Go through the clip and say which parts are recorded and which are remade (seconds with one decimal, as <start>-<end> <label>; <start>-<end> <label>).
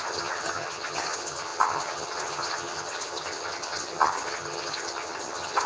0.0-5.7 remade